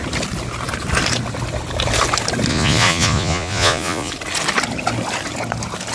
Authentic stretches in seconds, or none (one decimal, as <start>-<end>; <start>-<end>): 0.0-2.5; 4.1-5.9